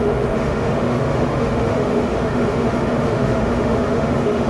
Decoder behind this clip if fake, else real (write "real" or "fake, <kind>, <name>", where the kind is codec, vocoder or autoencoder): fake, autoencoder, DAC-VAE